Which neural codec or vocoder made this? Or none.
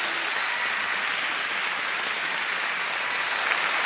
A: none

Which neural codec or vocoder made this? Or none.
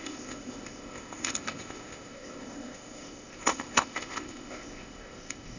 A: codec, ZipCodec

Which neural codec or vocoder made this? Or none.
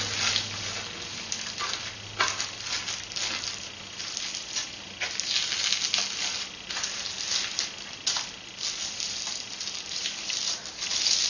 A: none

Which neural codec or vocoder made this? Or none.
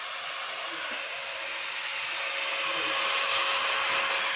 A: none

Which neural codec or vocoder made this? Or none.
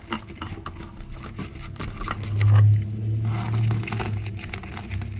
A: none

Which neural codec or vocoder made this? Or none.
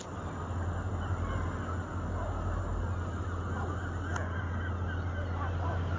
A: none